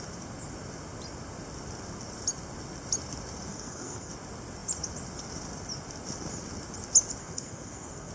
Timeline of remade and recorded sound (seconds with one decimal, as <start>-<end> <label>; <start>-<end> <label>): 0.0-3.5 recorded; 3.5-4.1 remade; 4.1-7.2 recorded; 7.2-8.1 remade